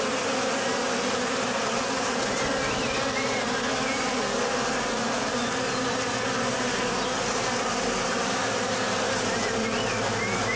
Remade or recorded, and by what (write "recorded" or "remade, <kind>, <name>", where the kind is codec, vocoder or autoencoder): recorded